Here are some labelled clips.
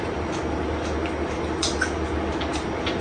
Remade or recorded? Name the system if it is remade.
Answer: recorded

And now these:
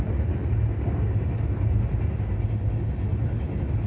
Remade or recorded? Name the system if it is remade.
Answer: recorded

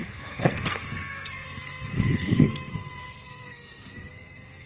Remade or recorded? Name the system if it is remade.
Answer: remade, codec, SNAC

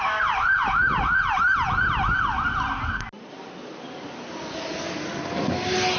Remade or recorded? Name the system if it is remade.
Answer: recorded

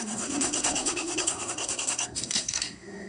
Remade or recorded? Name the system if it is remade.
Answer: remade, codec, SNAC